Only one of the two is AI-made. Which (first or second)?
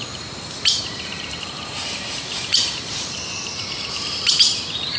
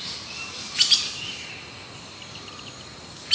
first